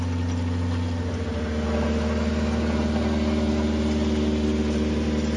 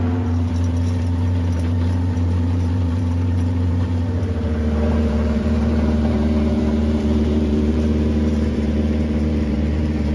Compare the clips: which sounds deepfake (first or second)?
second